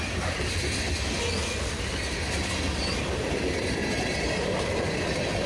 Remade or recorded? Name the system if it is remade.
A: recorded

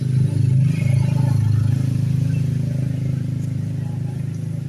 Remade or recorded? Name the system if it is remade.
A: recorded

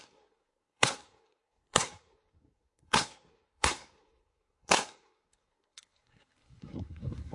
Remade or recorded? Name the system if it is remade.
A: remade, codec, SNAC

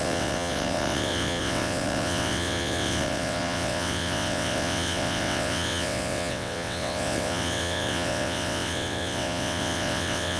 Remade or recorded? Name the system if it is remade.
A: remade, vocoder, WaveNeXt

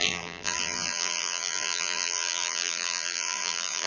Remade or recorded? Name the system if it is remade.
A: remade, vocoder, BigVGAN v2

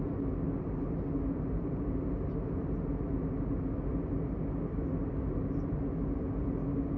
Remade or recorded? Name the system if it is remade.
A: recorded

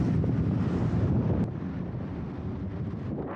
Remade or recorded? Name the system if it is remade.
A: recorded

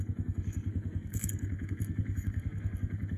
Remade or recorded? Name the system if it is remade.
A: remade, codec, SNAC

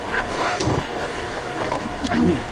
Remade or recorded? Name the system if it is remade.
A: remade, codec, DAC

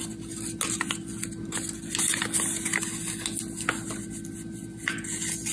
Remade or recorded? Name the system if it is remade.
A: recorded